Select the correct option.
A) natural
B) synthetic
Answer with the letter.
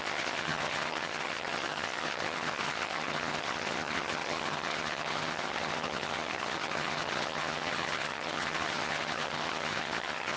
B